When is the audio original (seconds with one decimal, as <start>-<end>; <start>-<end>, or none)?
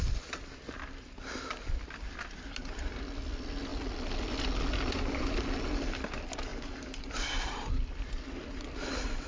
0.0-6.5; 7.7-9.3